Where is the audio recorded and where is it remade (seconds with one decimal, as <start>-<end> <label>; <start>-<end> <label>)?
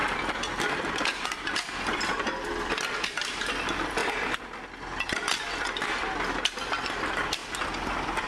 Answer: 0.0-0.9 recorded; 0.9-4.0 remade; 4.0-6.9 recorded; 6.9-8.3 remade